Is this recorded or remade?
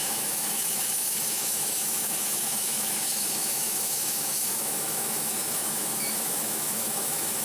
remade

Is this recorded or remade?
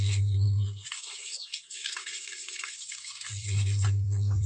remade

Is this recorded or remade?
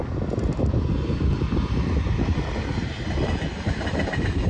recorded